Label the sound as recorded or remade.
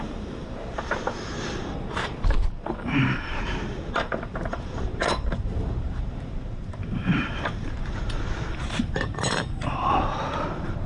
remade